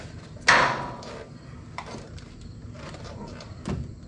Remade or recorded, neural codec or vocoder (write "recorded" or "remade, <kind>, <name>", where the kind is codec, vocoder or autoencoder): recorded